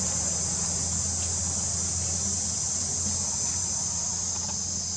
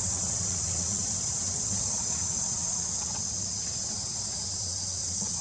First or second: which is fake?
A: second